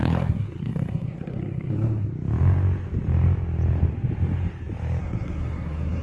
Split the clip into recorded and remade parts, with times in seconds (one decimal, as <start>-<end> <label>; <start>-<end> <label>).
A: 0.0-2.1 remade; 2.1-5.0 recorded; 5.0-6.0 remade

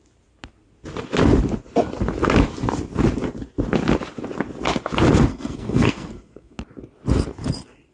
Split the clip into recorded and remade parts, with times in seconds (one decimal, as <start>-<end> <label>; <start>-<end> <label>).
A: 0.0-5.3 recorded; 5.3-6.6 remade; 6.6-7.9 recorded

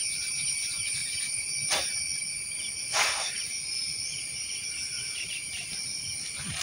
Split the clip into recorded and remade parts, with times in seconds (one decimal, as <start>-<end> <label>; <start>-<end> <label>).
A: 0.0-6.6 recorded

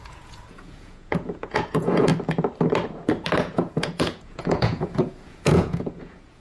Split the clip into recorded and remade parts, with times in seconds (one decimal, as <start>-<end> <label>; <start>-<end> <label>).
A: 0.0-2.1 remade; 2.1-3.4 recorded; 3.4-6.4 remade

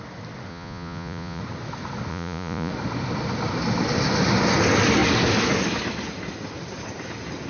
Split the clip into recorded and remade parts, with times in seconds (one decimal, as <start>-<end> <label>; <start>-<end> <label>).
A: 0.0-0.5 recorded; 0.5-1.4 remade; 1.4-2.1 recorded; 2.1-2.7 remade; 2.7-7.5 recorded

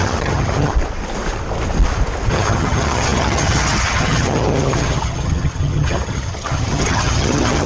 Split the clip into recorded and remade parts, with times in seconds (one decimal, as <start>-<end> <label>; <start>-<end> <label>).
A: 0.0-0.7 remade; 0.7-2.3 recorded; 2.3-7.7 remade

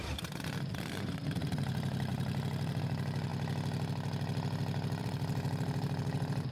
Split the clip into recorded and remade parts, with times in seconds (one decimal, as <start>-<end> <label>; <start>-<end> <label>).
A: 0.0-3.3 remade; 3.3-5.0 recorded; 5.0-6.5 remade

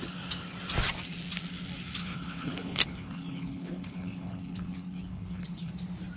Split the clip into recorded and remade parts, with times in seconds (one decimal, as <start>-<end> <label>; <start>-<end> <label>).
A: 0.0-2.0 recorded; 2.0-5.7 remade; 5.7-6.2 recorded